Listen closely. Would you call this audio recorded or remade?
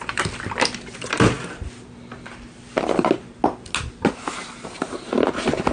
recorded